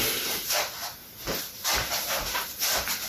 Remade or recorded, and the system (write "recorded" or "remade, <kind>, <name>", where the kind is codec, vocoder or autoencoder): recorded